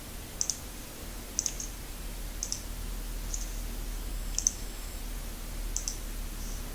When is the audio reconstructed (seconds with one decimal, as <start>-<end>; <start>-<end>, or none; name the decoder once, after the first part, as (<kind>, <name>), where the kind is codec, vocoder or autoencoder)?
4.1-5.0 (codec, DAC)